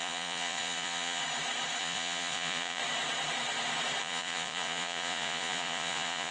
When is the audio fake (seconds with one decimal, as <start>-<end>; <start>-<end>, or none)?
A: 0.0-1.2; 1.8-2.8; 4.0-6.3